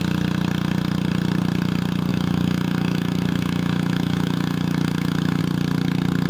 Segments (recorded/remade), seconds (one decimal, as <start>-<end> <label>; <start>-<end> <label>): 0.0-2.1 recorded; 2.1-5.4 remade; 5.4-6.3 recorded